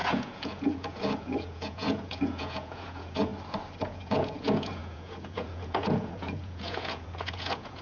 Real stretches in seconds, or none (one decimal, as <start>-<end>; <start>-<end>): 3.3-3.8